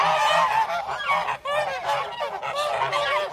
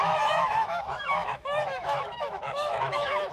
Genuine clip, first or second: first